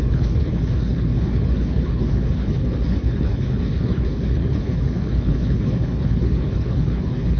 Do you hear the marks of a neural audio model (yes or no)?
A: yes